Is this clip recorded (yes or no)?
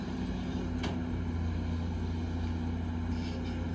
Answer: yes